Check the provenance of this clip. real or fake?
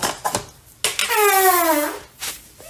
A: real